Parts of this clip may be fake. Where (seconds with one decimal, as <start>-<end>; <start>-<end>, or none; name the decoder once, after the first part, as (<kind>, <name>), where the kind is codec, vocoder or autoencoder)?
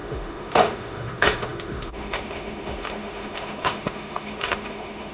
0.0-5.1 (autoencoder, DAC-VAE)